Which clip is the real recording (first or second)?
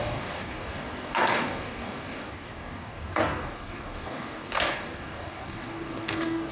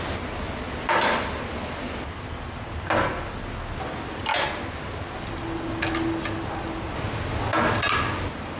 second